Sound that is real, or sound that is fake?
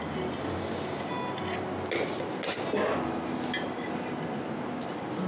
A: real